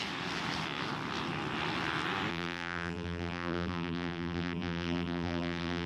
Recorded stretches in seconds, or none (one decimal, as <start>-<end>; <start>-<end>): 0.0-2.3